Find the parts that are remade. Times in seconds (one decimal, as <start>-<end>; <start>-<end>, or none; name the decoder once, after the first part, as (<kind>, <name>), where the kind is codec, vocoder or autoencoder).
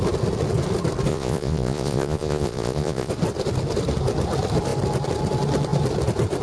1.1-3.1 (vocoder, Vocos)